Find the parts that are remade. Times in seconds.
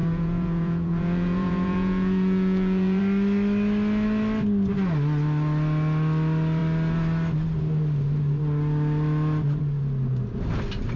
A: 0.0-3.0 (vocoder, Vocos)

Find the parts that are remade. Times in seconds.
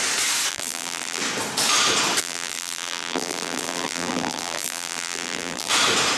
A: 0.5-1.2 (vocoder, BigVGAN v2); 2.2-5.7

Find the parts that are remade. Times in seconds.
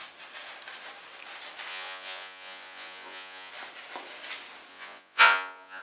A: 1.7-3.5 (vocoder, Vocos); 4.7-5.8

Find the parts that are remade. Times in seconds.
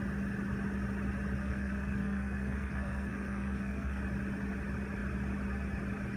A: 1.4-4.0 (codec, SNAC)